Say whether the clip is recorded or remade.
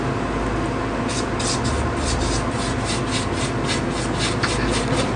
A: recorded